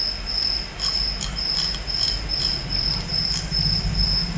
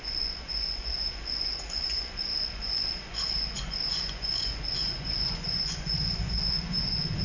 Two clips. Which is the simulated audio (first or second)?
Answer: second